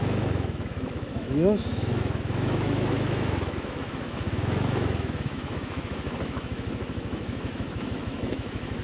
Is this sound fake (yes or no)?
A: yes